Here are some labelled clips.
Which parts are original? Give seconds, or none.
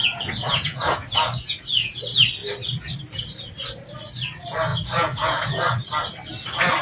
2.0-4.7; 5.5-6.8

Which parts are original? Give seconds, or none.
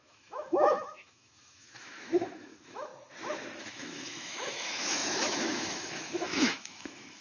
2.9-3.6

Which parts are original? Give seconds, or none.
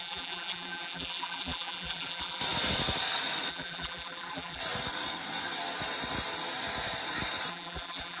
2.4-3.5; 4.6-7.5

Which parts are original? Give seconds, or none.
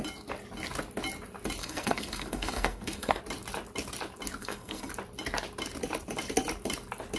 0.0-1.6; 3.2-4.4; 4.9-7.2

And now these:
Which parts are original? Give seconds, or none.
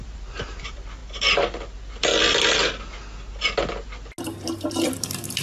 1.0-4.2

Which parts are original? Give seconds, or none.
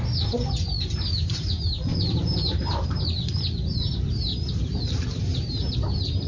0.0-1.3; 3.0-4.3